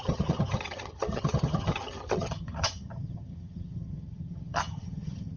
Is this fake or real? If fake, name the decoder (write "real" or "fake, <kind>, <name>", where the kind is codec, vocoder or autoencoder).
fake, vocoder, HiFi-GAN